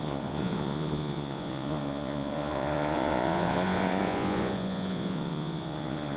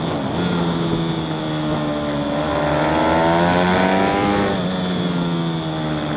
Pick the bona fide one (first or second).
second